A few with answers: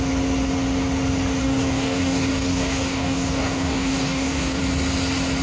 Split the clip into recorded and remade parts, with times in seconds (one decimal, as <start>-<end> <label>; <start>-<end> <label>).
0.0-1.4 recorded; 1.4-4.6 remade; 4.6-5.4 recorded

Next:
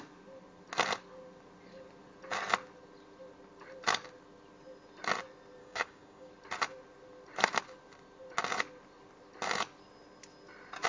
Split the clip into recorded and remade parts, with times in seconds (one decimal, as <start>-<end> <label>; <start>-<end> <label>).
0.0-5.6 recorded; 5.6-6.3 remade; 6.3-10.9 recorded

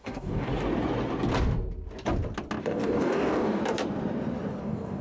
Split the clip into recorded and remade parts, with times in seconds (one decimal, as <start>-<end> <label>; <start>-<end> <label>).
0.0-0.5 remade; 0.5-2.6 recorded; 2.6-3.6 remade; 3.6-4.6 recorded; 4.6-5.0 remade

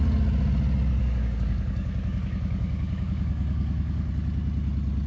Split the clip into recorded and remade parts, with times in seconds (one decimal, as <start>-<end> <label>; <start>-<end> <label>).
0.0-1.0 recorded; 1.0-4.1 remade; 4.1-5.1 recorded

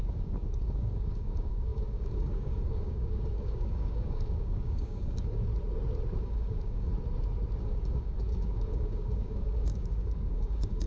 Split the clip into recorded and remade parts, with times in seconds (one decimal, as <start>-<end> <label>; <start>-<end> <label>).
0.0-5.5 remade; 5.5-6.2 recorded; 6.2-6.9 remade; 6.9-7.6 recorded; 7.6-10.9 remade

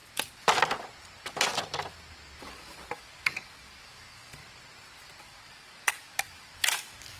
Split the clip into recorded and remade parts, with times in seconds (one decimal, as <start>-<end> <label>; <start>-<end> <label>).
0.0-2.4 recorded; 2.4-4.4 remade; 4.4-5.2 recorded; 5.2-7.2 remade